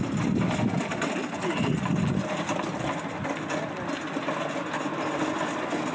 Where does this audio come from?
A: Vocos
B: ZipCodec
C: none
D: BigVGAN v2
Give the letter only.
C